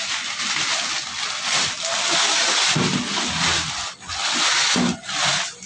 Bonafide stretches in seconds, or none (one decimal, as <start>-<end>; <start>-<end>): 0.0-5.7

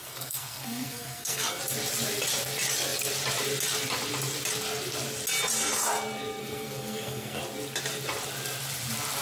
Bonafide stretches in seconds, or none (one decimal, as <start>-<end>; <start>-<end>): 1.6-6.4; 7.4-9.2

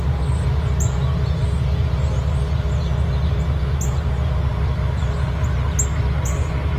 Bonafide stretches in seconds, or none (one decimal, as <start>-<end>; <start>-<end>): 0.0-6.8

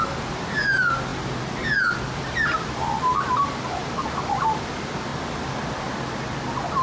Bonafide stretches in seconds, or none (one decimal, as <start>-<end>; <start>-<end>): 0.0-1.1; 4.6-6.8

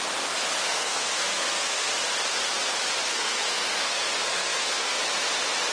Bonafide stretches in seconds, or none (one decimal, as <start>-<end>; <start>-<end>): 0.0-0.6; 1.9-3.1; 5.0-5.7

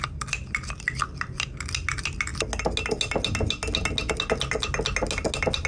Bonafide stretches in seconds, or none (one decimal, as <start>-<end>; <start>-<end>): 0.0-5.7

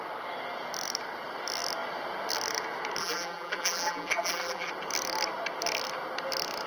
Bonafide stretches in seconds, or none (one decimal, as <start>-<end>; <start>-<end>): 0.0-3.0; 4.7-6.7

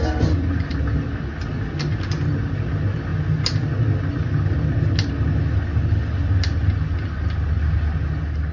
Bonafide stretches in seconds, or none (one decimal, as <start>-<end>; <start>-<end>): 0.0-8.5